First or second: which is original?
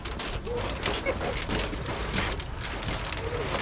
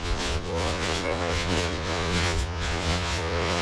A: first